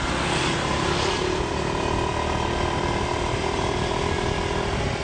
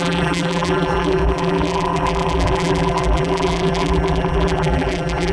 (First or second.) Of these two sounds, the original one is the first